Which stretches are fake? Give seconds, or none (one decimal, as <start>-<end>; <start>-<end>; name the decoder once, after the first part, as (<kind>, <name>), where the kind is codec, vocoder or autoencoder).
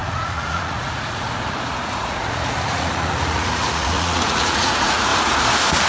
0.0-5.1 (vocoder, Vocos)